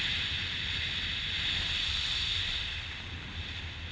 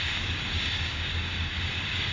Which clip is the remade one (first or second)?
second